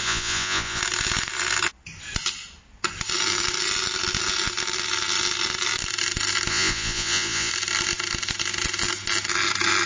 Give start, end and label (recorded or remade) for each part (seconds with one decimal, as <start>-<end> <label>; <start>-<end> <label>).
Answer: 0.0-0.8 remade; 0.8-6.5 recorded; 6.5-7.5 remade; 7.5-9.9 recorded